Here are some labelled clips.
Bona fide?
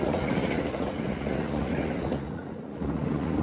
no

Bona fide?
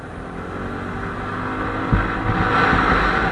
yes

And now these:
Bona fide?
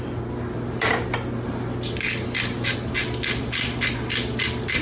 yes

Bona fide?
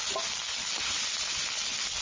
yes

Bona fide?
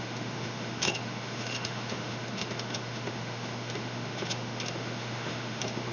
no